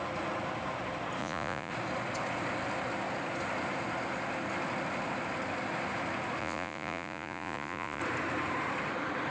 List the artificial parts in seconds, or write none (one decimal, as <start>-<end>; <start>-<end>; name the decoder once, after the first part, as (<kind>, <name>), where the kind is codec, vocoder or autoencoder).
1.2-1.7 (vocoder, Vocos); 6.4-8.0